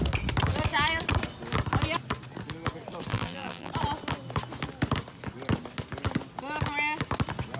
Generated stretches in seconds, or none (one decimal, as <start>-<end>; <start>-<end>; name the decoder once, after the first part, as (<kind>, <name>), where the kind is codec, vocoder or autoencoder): 3.1-3.7 (vocoder, BigVGAN v2)